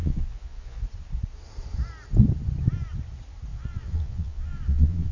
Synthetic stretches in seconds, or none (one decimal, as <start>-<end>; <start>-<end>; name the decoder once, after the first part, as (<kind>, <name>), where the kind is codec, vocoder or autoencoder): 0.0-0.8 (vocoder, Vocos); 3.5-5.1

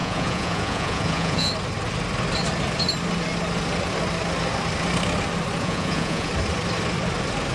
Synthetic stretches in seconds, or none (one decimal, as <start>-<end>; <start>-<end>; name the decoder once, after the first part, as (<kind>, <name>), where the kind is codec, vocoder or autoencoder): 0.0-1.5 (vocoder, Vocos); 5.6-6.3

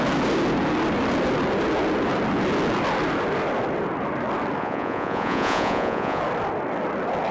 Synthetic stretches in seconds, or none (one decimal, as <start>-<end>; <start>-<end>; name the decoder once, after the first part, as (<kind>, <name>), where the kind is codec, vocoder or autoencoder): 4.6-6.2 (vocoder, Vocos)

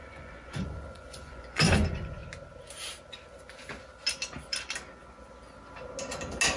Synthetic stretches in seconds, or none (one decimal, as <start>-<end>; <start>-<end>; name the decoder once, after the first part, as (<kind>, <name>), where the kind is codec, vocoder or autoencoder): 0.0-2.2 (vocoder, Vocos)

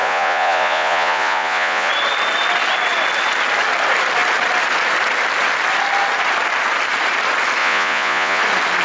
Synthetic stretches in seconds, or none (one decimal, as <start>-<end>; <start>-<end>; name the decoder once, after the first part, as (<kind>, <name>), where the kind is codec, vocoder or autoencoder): 0.0-1.9 (vocoder, Vocos); 7.6-8.4

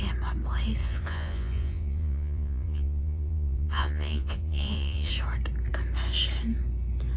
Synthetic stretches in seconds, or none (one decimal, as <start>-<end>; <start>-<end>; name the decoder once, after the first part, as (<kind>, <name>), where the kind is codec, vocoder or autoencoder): 0.8-5.1 (vocoder, Vocos)

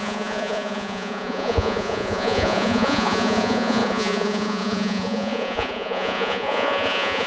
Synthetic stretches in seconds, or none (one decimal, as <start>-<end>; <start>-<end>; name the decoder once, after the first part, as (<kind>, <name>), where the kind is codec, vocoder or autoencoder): 0.0-7.3 (vocoder, Vocos)